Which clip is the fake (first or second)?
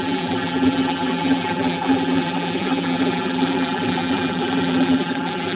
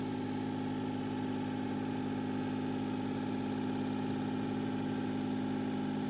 first